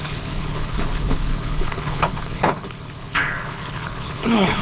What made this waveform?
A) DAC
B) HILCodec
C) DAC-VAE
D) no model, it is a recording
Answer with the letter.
B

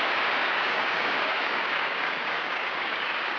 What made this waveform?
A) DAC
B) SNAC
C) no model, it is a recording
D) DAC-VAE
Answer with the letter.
A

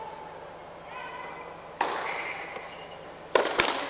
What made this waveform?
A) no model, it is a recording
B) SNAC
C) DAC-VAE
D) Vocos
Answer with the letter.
A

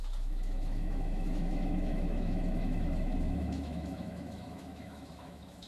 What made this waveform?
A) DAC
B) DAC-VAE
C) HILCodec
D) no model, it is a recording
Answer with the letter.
B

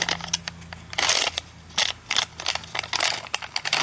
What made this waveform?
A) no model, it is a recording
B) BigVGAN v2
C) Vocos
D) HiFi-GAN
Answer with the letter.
A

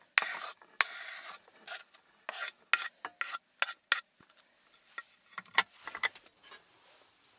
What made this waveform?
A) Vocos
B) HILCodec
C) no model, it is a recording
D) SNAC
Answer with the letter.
C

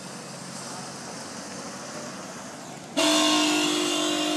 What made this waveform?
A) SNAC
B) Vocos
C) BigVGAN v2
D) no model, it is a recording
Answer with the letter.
D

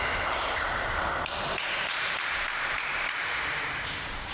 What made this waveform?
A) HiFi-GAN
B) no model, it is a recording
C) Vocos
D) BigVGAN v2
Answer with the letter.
D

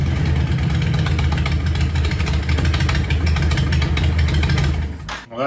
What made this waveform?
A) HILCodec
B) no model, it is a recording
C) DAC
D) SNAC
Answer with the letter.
B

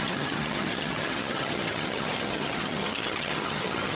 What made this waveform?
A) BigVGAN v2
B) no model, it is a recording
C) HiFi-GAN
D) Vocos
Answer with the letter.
C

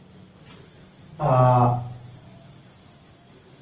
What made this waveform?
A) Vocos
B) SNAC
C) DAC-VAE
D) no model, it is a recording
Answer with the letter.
D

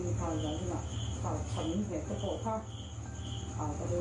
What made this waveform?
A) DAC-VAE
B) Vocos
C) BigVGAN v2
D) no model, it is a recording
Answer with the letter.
D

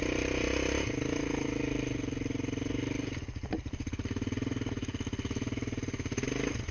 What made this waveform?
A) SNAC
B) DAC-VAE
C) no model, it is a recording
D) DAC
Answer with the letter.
C